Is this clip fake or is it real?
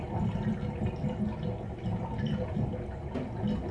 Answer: real